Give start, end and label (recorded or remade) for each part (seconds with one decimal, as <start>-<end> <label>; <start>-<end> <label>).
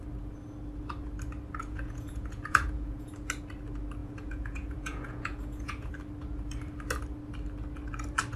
0.0-1.6 recorded; 1.6-3.1 remade; 3.1-4.0 recorded; 4.0-5.9 remade; 5.9-8.4 recorded